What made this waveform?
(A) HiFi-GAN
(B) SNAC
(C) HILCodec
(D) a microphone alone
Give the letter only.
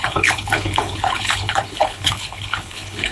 C